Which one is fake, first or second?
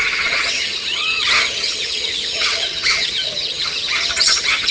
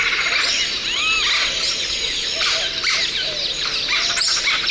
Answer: first